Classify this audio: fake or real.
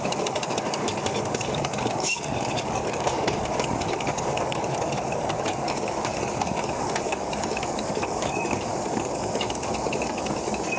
fake